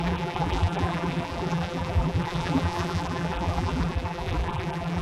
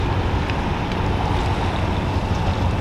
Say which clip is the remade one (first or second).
first